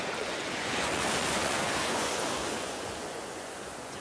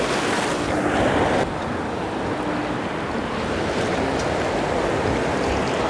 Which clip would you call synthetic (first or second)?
first